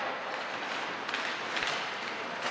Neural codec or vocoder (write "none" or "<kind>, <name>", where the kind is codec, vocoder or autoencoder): none